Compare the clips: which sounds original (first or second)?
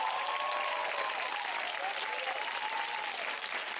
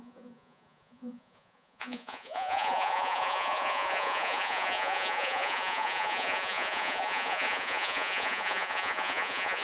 first